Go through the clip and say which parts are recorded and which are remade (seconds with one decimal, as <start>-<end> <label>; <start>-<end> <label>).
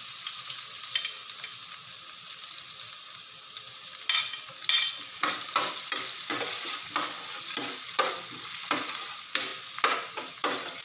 0.0-10.8 recorded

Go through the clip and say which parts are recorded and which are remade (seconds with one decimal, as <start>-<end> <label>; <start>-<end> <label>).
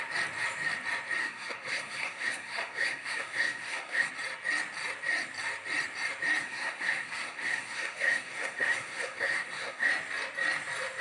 0.0-1.2 recorded; 1.2-4.1 remade; 4.1-6.4 recorded; 6.4-9.9 remade; 9.9-11.0 recorded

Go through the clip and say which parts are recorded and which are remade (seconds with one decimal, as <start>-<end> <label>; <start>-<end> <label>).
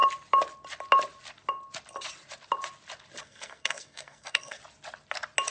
0.0-3.2 recorded; 3.2-4.6 remade; 4.6-5.5 recorded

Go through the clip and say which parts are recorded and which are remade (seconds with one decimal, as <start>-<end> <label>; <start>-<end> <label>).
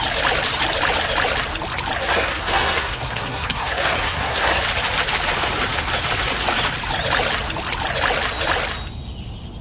0.0-2.0 recorded; 2.0-4.6 remade; 4.6-9.6 recorded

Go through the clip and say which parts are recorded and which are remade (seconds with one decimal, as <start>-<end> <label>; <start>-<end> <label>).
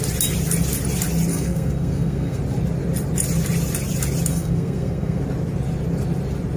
0.0-1.3 recorded; 1.3-2.4 remade; 2.4-4.3 recorded; 4.3-5.2 remade; 5.2-6.6 recorded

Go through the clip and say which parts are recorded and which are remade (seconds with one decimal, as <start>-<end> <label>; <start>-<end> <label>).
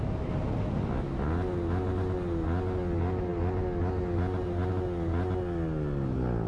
0.0-6.5 recorded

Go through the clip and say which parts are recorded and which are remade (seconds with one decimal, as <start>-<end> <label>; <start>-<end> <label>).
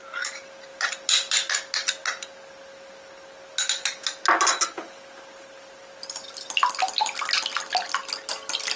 0.0-8.8 recorded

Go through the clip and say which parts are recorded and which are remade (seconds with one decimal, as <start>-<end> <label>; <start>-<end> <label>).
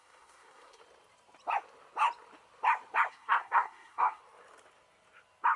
0.0-0.8 remade; 0.8-3.1 recorded; 3.1-4.2 remade; 4.2-5.6 recorded